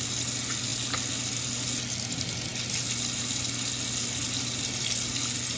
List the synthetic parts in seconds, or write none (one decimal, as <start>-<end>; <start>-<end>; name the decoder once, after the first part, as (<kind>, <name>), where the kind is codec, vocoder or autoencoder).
none